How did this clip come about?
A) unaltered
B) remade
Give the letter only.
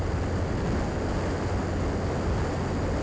A